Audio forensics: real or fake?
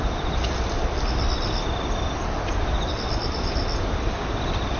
real